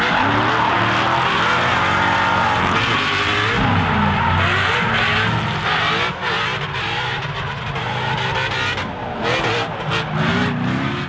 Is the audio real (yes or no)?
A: yes